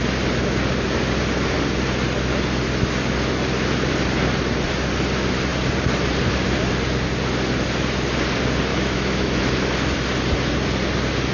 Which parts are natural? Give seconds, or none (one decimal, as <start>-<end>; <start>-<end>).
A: 0.0-8.7; 9.4-11.3